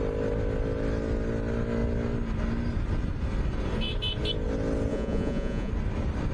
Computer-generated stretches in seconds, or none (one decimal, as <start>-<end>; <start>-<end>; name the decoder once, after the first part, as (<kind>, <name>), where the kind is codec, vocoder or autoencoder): 4.9-5.7 (vocoder, Vocos)